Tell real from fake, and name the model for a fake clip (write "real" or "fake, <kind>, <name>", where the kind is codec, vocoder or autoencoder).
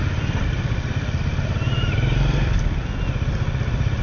real